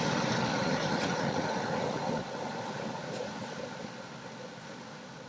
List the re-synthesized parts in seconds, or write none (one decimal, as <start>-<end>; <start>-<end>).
0.5-2.2; 2.9-3.5